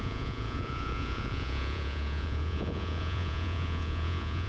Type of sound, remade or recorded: remade